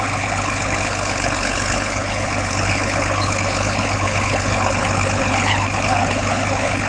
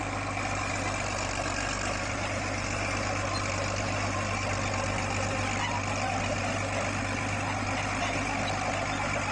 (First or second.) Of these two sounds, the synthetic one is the first